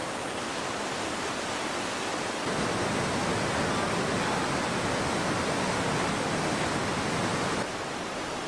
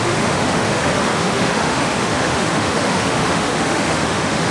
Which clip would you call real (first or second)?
first